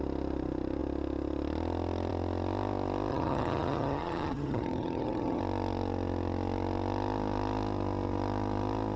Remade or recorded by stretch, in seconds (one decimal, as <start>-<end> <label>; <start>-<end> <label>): 0.0-3.1 recorded; 3.1-5.4 remade; 5.4-9.0 recorded